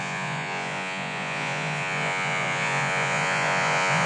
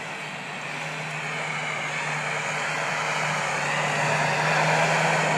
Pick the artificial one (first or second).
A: first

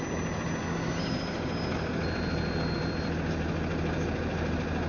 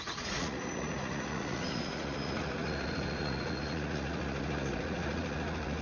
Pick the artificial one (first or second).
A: second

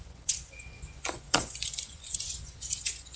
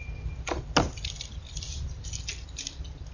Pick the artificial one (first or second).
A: first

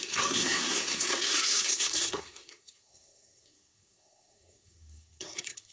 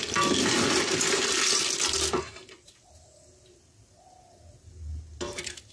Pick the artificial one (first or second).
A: first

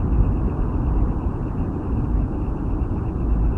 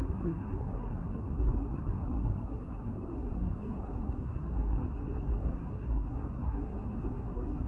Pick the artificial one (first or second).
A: second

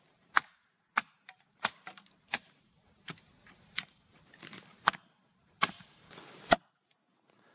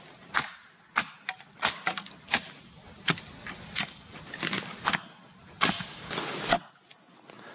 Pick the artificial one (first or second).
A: first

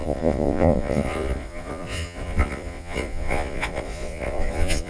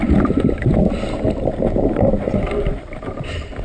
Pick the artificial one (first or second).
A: first